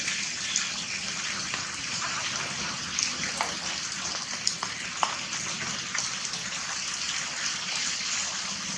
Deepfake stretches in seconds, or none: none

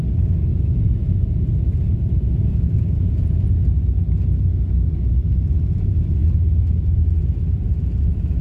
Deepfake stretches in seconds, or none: 0.5-3.6 (vocoder, Vocos)

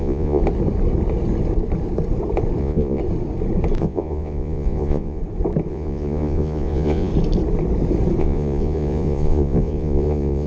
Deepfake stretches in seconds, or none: 0.0-0.4 (vocoder, Vocos); 2.6-3.0; 3.8-5.2; 5.7-7.1; 8.2-10.5

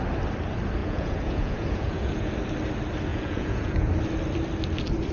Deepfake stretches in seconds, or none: 0.8-2.3 (vocoder, Vocos); 3.1-3.9

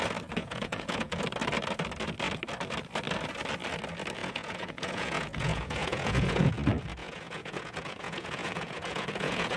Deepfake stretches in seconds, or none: 0.4-1.2 (vocoder, Vocos); 4.2-6.5; 7.0-9.6

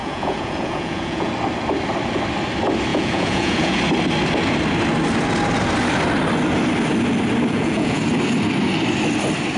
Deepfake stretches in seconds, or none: 0.0-1.3 (vocoder, Vocos); 2.9-3.8; 7.5-8.0

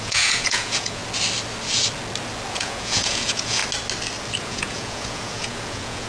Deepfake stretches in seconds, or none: 0.0-1.0 (vocoder, Vocos); 2.5-3.6; 4.4-6.1